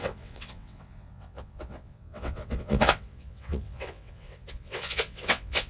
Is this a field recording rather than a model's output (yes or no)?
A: no